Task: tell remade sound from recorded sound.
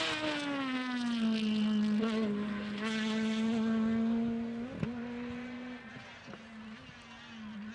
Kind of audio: recorded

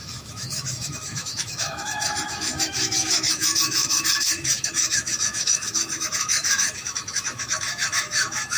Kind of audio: remade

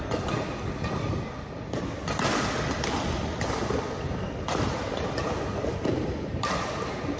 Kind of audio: recorded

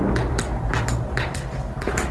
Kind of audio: recorded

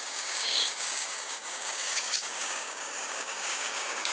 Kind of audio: remade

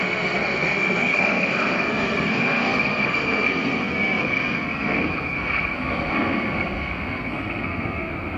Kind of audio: remade